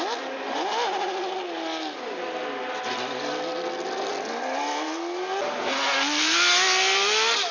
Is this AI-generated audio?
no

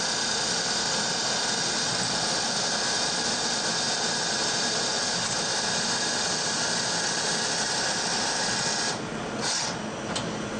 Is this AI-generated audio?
no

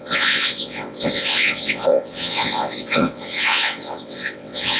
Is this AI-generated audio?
yes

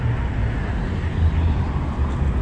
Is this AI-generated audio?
no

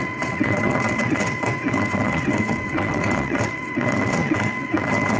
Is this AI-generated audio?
yes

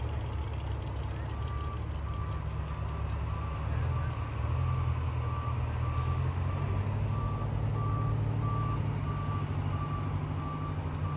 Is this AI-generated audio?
no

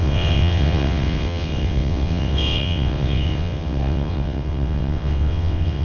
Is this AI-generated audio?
yes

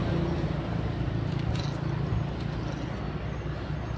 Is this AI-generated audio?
no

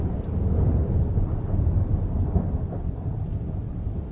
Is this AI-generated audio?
no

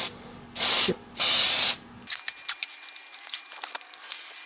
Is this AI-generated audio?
no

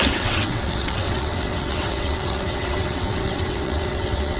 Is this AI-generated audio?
yes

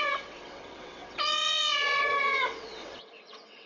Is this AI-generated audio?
yes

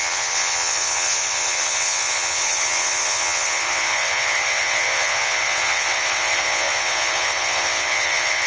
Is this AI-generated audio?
yes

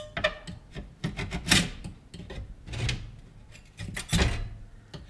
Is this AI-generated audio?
no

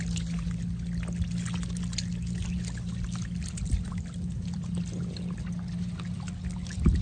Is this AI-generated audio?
no